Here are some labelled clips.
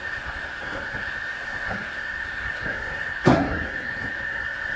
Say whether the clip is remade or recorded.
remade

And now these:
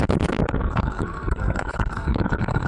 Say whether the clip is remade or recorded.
remade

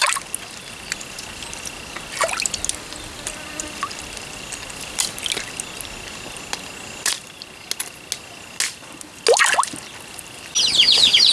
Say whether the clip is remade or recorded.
recorded